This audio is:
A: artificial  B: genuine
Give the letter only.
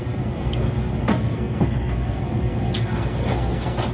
A